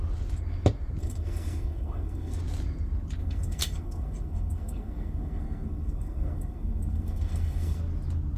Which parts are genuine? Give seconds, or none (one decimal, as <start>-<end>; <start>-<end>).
0.0-1.0; 2.4-3.2; 7.8-8.4